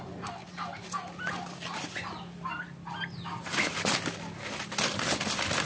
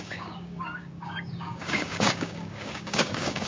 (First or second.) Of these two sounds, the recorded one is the first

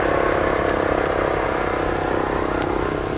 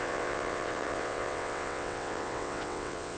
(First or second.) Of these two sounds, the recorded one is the first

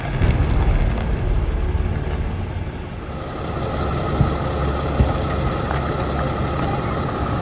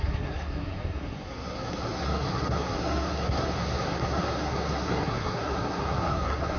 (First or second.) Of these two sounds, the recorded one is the first